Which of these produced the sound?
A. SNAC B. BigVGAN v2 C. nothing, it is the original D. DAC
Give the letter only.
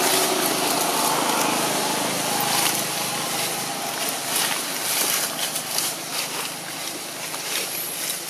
C